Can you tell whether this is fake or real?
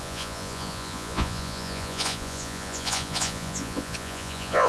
fake